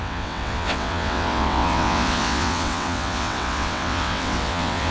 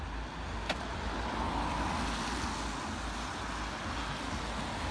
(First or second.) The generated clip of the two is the first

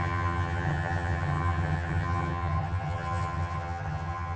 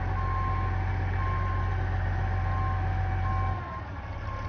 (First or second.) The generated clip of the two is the first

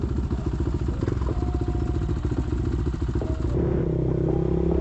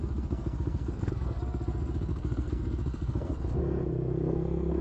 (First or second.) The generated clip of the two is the second